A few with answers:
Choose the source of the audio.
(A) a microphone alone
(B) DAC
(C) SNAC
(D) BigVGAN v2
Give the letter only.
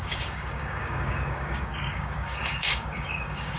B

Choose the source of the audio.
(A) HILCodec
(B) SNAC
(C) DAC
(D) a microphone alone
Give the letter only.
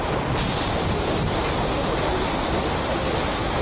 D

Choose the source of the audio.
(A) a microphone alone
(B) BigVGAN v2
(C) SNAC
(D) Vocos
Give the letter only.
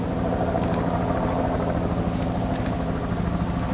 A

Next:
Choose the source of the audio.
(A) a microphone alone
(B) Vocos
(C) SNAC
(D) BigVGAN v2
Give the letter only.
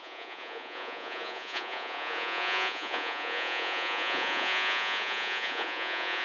B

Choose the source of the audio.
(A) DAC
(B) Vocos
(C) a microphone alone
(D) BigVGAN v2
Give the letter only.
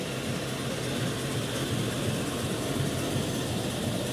C